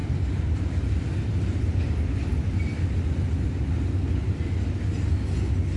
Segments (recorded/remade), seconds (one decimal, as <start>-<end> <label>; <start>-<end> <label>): 0.0-5.8 recorded

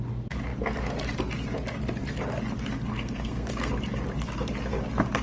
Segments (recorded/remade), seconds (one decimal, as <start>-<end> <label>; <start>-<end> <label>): 0.0-2.9 recorded; 2.9-3.7 remade; 3.7-5.2 recorded

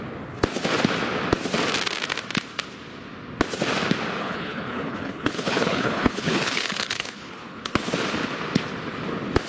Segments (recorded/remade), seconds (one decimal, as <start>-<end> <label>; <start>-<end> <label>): 0.0-4.2 recorded; 4.2-7.9 remade; 7.9-9.5 recorded

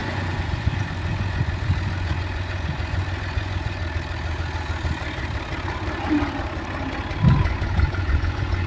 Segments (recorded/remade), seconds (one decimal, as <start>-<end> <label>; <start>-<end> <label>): 0.0-3.8 remade; 3.8-7.4 recorded; 7.4-8.7 remade

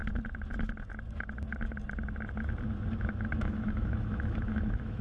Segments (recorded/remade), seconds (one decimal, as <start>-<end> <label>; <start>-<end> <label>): 0.0-3.0 recorded; 3.0-5.0 remade

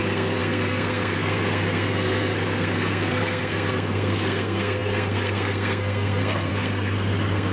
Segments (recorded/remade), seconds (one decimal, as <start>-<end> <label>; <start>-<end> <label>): 0.0-7.5 remade

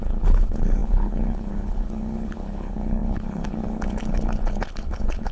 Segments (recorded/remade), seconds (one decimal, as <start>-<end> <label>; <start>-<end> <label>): 0.0-5.3 remade